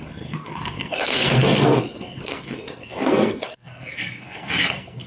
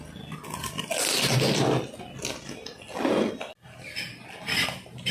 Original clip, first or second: second